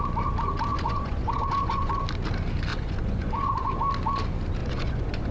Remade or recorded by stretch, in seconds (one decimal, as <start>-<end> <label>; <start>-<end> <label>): 0.0-0.7 recorded; 0.7-1.9 remade; 1.9-2.7 recorded; 2.7-3.7 remade; 3.7-4.6 recorded; 4.6-5.3 remade